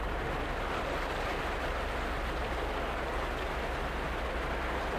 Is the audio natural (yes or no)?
yes